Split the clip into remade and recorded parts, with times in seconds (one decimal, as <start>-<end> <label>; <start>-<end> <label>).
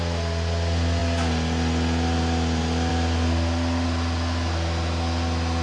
0.0-5.6 recorded